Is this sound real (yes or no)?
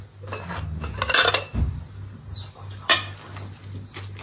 yes